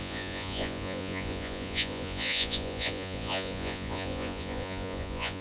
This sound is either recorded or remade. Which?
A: remade